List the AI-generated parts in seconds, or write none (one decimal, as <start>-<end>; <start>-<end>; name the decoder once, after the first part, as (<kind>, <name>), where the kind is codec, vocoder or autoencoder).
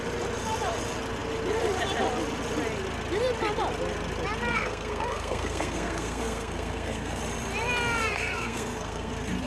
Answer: 4.5-7.2 (codec, SNAC); 8.0-9.1